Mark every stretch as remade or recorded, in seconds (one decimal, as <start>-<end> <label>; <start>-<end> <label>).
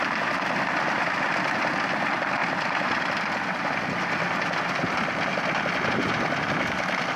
0.0-2.4 recorded; 2.4-3.2 remade; 3.2-7.2 recorded